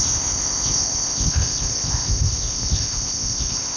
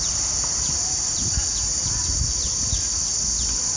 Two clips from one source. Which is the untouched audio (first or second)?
second